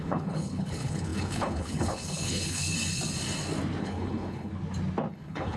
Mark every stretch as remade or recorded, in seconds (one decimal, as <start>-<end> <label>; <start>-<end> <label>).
0.0-2.6 remade; 2.6-3.8 recorded; 3.8-4.5 remade; 4.5-5.1 recorded; 5.1-5.6 remade